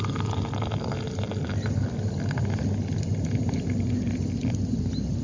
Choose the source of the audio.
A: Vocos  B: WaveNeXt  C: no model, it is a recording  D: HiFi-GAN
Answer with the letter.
C